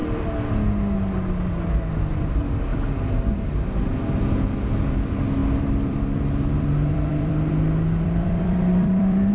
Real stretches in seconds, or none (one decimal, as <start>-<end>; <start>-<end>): 0.5-5.4

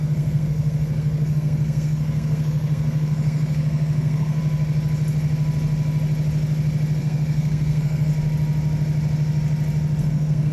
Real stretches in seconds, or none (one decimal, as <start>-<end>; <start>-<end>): 4.4-7.0; 8.1-10.0

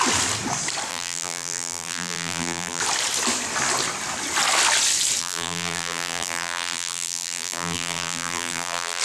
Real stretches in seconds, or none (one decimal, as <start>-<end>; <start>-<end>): 0.0-0.9; 2.8-5.2

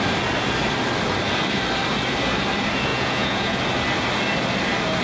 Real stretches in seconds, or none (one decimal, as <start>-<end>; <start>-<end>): 0.0-2.9; 3.6-5.0

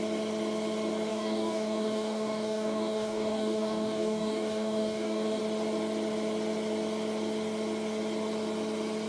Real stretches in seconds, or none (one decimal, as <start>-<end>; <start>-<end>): 0.0-1.1; 5.4-9.1